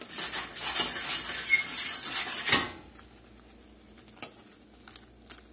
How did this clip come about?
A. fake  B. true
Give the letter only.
B